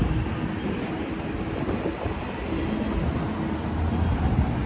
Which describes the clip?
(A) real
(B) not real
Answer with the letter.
A